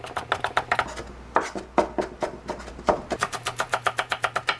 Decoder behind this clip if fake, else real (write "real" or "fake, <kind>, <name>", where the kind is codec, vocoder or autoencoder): real